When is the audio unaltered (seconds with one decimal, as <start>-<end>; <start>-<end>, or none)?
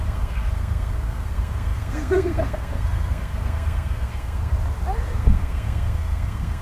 4.5-5.0